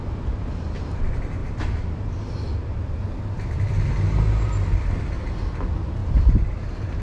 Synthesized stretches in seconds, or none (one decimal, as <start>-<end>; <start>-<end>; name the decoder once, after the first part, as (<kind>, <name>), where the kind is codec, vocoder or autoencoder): 6.0-7.0 (vocoder, BigVGAN v2)